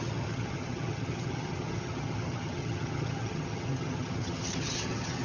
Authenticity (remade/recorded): remade